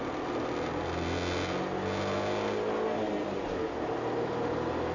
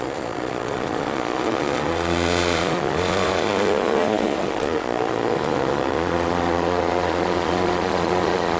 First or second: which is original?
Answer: first